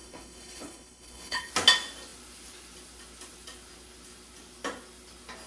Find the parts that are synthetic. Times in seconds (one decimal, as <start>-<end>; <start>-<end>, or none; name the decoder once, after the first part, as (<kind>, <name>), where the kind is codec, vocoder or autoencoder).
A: 0.0-1.5 (codec, HILCodec)